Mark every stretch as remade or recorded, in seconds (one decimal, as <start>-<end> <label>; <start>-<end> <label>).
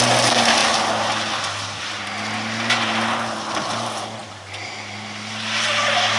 0.0-6.2 recorded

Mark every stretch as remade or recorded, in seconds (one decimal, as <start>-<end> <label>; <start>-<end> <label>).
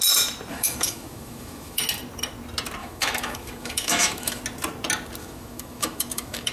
0.0-0.5 recorded; 0.5-1.8 remade; 1.8-2.8 recorded; 2.8-4.4 remade; 4.4-5.2 recorded; 5.2-6.5 remade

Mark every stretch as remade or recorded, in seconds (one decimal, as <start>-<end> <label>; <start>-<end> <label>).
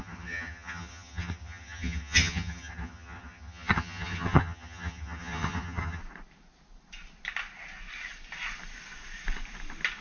0.0-6.0 remade; 6.0-10.0 recorded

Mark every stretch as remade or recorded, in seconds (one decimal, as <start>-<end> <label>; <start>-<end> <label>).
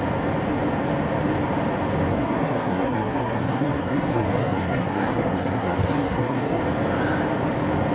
0.0-2.1 recorded; 2.1-6.6 remade; 6.6-7.9 recorded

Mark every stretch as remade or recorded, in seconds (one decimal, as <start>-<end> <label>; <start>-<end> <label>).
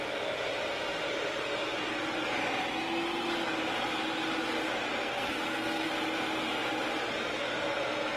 0.0-5.0 recorded; 5.0-5.9 remade; 5.9-8.2 recorded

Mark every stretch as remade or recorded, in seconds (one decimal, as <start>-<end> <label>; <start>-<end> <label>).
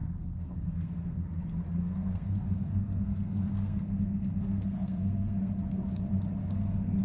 0.0-1.4 remade; 1.4-1.8 recorded; 1.8-5.5 remade; 5.5-6.4 recorded; 6.4-7.0 remade